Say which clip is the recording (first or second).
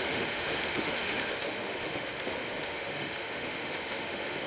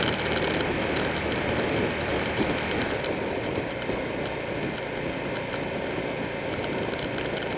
second